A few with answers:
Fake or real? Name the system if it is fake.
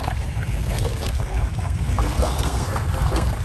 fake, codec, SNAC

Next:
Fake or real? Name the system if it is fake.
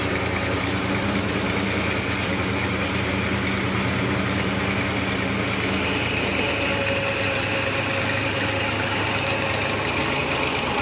real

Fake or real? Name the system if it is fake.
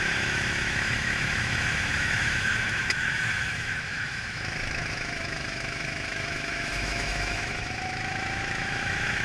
fake, autoencoder, DAC-VAE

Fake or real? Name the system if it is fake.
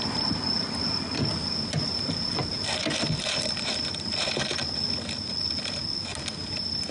real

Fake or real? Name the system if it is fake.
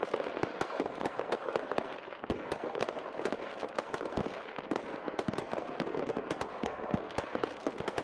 fake, codec, SNAC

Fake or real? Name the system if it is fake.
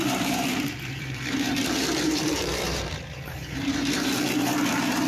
fake, vocoder, BigVGAN v2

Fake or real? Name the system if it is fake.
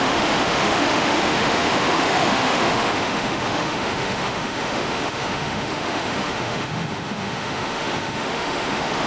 fake, autoencoder, DAC-VAE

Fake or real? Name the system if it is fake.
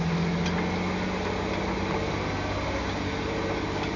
real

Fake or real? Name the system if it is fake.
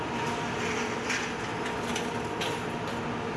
real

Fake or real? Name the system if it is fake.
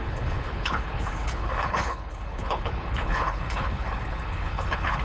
fake, codec, HILCodec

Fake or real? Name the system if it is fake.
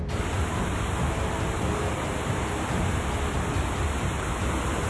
real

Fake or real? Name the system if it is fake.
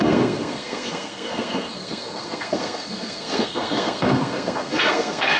fake, codec, SNAC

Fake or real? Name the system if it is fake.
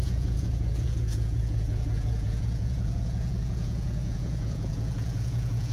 fake, vocoder, Vocos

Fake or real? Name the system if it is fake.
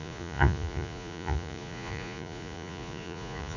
fake, vocoder, Vocos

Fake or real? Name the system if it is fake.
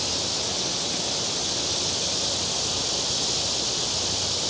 real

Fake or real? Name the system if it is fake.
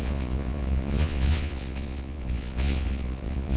fake, vocoder, Vocos